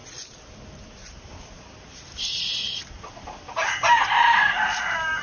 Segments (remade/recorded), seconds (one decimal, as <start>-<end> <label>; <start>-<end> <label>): 0.0-5.2 recorded